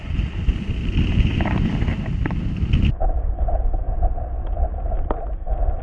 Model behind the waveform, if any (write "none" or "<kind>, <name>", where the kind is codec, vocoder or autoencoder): none